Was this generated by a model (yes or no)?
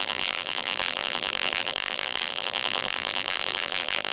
yes